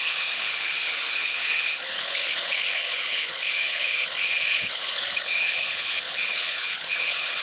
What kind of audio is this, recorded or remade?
remade